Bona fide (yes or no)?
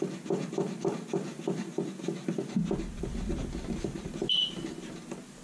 yes